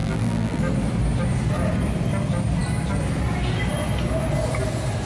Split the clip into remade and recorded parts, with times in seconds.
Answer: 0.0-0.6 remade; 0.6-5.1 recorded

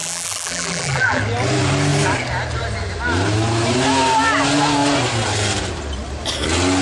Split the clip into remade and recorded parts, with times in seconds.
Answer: 0.0-1.2 remade; 1.2-6.8 recorded

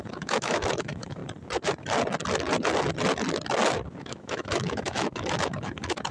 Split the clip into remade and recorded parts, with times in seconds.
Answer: 0.0-1.2 remade; 1.2-4.0 recorded; 4.0-6.1 remade

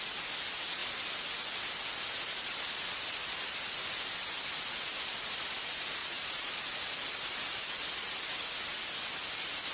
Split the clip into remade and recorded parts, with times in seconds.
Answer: 0.0-6.0 recorded; 6.0-6.6 remade; 6.6-9.7 recorded

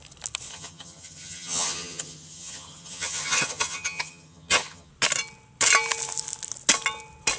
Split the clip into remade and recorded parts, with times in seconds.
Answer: 0.0-0.5 recorded; 0.5-4.9 remade; 4.9-7.4 recorded

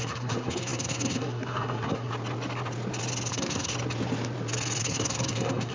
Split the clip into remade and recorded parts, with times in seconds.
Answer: 0.0-2.1 remade; 2.1-3.3 recorded; 3.3-3.7 remade; 3.7-4.8 recorded; 4.8-5.7 remade

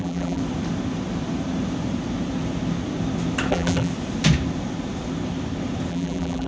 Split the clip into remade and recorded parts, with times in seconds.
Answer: 0.0-0.4 remade; 0.4-3.5 recorded; 3.5-3.9 remade; 3.9-5.9 recorded; 5.9-6.5 remade